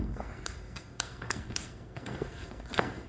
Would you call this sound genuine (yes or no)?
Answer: no